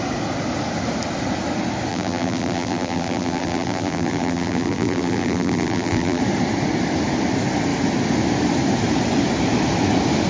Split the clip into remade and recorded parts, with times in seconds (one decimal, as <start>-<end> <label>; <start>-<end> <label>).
0.0-1.9 recorded; 1.9-6.2 remade; 6.2-10.3 recorded